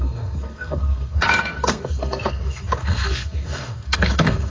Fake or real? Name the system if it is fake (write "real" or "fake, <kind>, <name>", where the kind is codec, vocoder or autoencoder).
fake, codec, SNAC